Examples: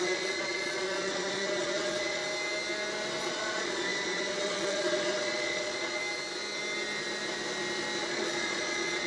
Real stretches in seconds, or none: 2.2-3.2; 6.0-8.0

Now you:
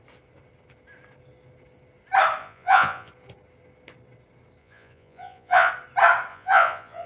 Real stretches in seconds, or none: 0.0-2.4; 3.1-4.6; 5.7-6.3

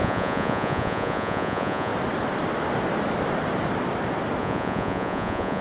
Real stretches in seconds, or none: 1.9-4.4

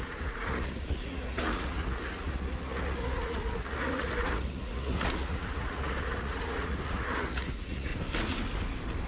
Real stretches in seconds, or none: 7.9-9.1

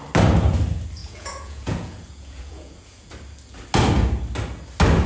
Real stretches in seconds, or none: 0.0-1.0; 3.1-5.1

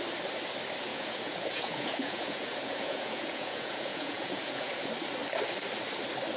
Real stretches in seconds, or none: 0.0-0.9; 4.7-6.4

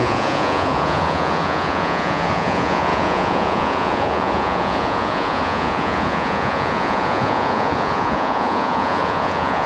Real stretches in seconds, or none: none